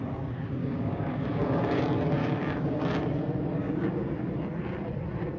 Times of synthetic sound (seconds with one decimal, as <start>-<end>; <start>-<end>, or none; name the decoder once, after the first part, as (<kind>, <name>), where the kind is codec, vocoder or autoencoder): 0.6-1.8 (codec, DAC); 2.2-2.8; 3.6-4.3